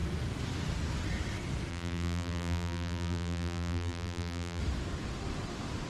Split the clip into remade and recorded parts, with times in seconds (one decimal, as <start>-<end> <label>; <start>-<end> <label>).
0.0-1.7 recorded; 1.7-4.6 remade; 4.6-5.9 recorded